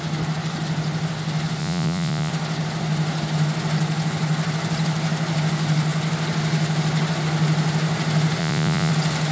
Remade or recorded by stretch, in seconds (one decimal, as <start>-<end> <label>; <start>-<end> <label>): 0.0-1.6 recorded; 1.6-2.3 remade; 2.3-8.4 recorded; 8.4-8.9 remade; 8.9-9.3 recorded